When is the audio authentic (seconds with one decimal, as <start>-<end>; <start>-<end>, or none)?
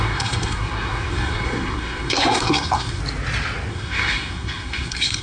3.0-3.7